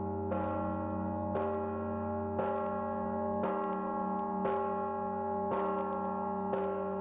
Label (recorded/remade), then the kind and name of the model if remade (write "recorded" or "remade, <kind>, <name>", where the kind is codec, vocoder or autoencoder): recorded